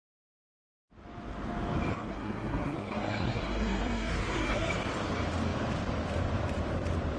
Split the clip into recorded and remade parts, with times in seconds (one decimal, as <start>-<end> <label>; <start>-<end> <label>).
0.0-1.9 recorded; 1.9-4.7 remade; 4.7-7.2 recorded